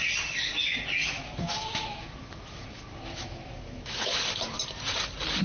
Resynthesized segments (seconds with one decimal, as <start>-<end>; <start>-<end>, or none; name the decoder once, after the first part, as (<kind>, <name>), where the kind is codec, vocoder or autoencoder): 1.0-4.2 (autoencoder, DAC-VAE)